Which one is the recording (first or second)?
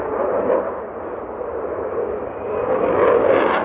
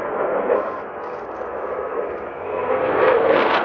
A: first